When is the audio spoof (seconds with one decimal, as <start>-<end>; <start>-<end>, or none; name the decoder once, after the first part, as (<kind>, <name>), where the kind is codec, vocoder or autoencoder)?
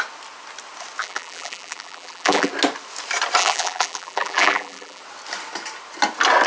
1.0-2.5 (vocoder, BigVGAN v2); 3.4-5.0